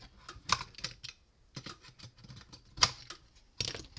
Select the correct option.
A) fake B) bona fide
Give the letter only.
B